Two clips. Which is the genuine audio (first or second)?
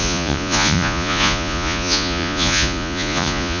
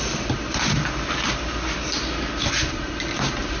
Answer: second